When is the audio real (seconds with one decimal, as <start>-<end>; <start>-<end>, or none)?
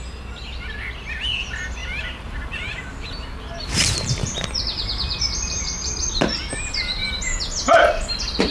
0.0-1.8; 5.9-7.0; 7.8-8.5